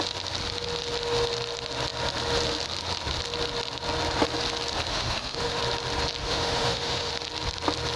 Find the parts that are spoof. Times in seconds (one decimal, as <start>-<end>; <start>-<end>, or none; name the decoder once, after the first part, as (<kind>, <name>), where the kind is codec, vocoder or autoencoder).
4.9-5.6 (autoencoder, DAC-VAE); 6.2-7.1